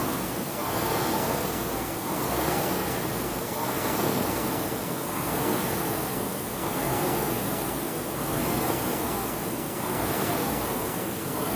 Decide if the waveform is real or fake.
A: fake